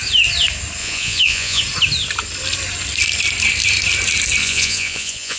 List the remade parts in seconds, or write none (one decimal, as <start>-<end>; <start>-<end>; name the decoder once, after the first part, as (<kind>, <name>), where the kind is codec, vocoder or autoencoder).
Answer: 0.8-1.6 (vocoder, Vocos); 4.4-5.4